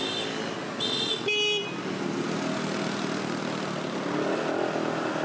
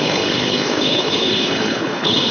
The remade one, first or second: second